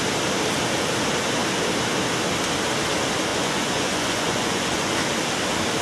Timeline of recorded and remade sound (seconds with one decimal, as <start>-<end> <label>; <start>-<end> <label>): 0.0-3.3 recorded; 3.3-5.0 remade; 5.0-5.8 recorded